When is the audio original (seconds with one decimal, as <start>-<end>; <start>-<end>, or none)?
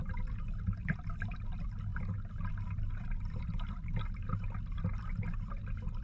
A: 0.0-6.0